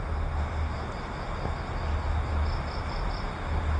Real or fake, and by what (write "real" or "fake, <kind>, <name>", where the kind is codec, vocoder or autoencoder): real